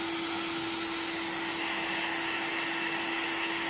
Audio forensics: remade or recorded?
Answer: recorded